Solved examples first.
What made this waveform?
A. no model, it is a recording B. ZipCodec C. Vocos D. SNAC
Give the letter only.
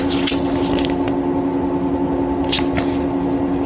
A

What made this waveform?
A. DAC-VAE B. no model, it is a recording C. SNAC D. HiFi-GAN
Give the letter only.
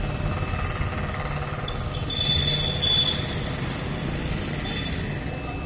B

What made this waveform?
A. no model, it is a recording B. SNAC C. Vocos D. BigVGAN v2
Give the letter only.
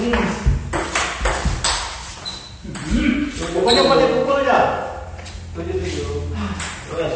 A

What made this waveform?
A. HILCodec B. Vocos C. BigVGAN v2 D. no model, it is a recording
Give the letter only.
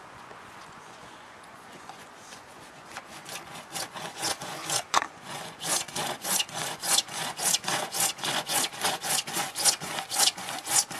B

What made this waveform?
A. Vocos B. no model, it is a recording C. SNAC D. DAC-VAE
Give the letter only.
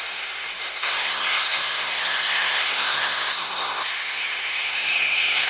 C